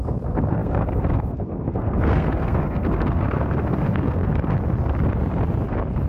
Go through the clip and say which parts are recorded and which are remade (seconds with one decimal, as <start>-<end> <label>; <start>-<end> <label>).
0.0-4.2 remade; 4.2-6.1 recorded